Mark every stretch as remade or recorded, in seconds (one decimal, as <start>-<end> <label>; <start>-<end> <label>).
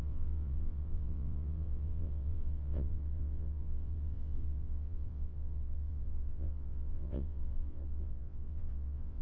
0.0-9.2 remade